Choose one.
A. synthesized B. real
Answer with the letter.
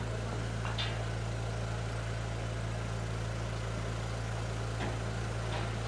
B